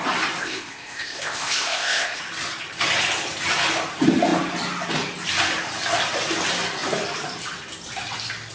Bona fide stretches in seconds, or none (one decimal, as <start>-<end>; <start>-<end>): 0.0-0.4; 2.2-8.5